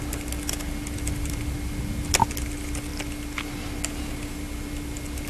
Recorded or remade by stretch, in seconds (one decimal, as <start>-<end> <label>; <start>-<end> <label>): 0.0-5.3 recorded